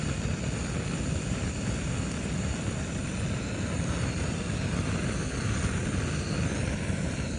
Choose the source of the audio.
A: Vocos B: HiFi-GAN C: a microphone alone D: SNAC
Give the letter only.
C